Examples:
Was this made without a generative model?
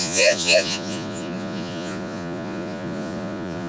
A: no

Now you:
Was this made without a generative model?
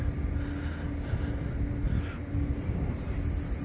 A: yes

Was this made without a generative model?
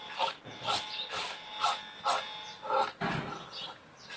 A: yes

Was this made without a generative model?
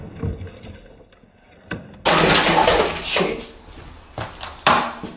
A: yes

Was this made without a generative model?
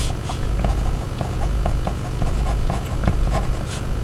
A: no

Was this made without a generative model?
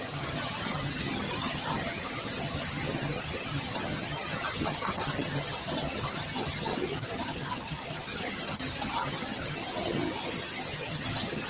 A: no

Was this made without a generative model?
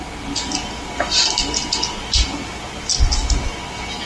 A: yes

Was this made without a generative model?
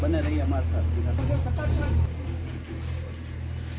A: yes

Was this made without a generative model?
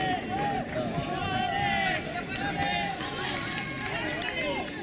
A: yes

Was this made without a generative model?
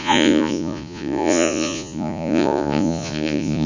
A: no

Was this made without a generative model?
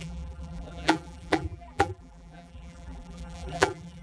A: no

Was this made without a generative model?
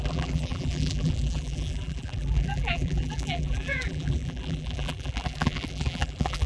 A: no